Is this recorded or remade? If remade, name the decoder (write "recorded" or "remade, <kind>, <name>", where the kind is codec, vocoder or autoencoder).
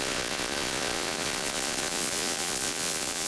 remade, vocoder, Vocos